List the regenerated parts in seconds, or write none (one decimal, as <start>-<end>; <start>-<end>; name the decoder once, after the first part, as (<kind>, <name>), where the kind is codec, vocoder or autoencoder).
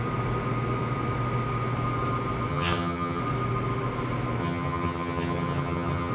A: 2.5-3.2 (vocoder, HiFi-GAN); 4.4-6.1